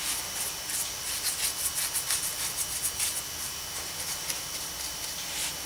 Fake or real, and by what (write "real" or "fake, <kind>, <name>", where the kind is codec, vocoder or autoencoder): real